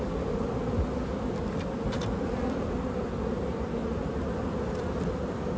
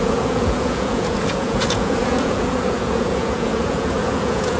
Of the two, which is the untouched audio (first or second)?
first